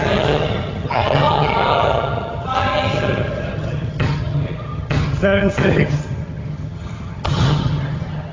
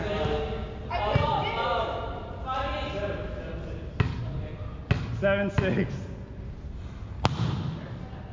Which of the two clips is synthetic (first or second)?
first